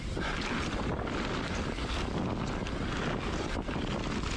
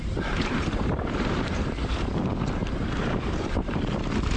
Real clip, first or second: first